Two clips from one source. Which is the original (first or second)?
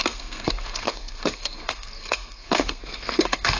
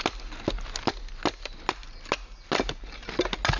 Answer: second